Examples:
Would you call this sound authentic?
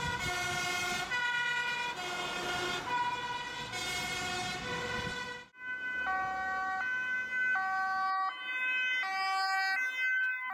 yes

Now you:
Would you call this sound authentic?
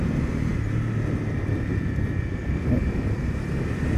yes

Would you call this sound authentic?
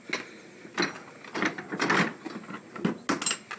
yes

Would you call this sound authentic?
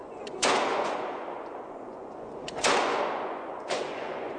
no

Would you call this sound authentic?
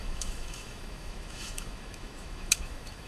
no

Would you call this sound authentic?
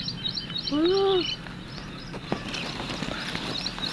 yes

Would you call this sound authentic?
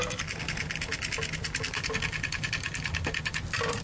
yes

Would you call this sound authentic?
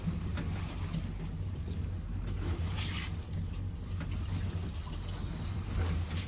yes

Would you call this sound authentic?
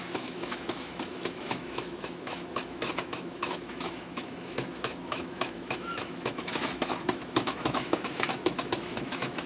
no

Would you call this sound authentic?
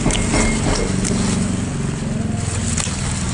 yes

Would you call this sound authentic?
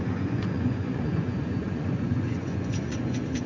no